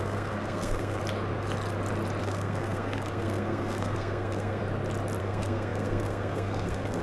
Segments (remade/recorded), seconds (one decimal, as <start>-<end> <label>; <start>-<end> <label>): 0.0-1.0 remade; 1.0-2.2 recorded; 2.2-4.6 remade; 4.6-5.2 recorded; 5.2-7.0 remade